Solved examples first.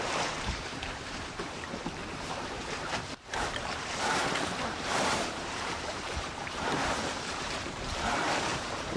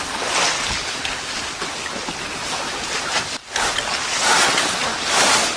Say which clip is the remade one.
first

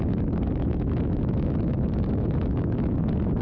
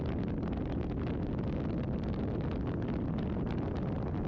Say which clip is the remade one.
first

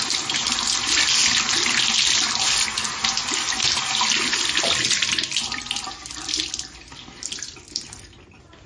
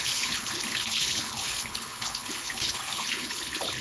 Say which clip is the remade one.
second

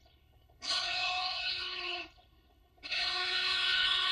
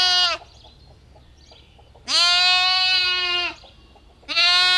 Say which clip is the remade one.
first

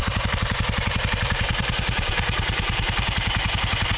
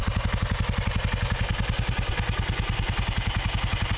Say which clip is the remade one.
first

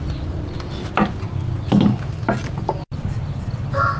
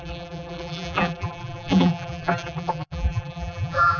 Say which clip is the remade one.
second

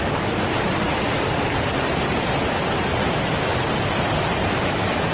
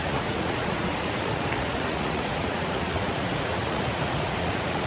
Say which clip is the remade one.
second